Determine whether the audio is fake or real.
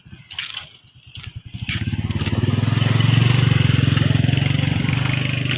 real